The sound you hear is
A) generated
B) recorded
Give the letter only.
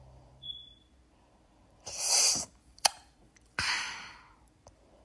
A